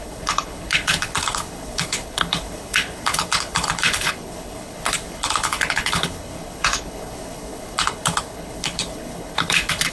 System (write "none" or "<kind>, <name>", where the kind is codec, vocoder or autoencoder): codec, HILCodec